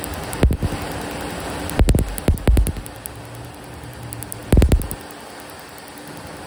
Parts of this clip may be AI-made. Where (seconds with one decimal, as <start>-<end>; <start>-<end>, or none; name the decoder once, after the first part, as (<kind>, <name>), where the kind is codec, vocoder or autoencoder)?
none